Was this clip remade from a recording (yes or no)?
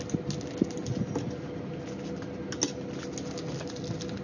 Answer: no